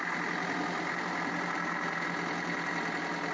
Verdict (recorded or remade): recorded